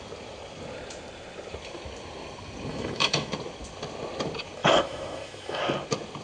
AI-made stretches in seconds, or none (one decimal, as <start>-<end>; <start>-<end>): 2.7-3.3; 4.6-5.6